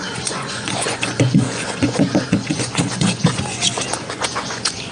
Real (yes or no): no